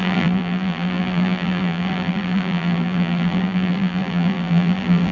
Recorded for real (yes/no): no